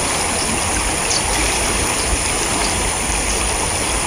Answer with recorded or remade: recorded